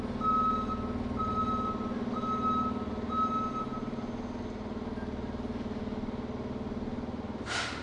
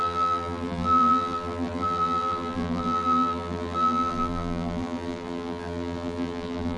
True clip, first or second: first